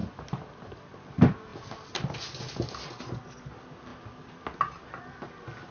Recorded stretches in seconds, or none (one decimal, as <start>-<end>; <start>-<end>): 0.0-3.9; 5.3-5.7